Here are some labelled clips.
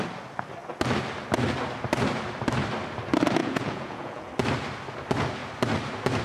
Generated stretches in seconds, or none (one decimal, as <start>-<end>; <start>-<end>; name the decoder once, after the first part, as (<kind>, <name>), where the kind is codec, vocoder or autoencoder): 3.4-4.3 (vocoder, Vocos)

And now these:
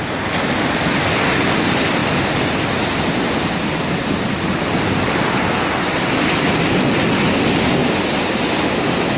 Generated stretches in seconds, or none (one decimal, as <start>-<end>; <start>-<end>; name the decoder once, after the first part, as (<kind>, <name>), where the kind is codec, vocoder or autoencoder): none

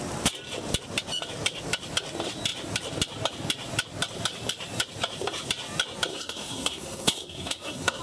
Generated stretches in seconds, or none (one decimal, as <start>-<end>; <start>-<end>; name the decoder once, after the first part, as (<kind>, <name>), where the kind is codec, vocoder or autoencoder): 6.1-8.0 (codec, SNAC)